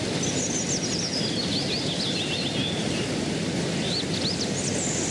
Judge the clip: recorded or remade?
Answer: recorded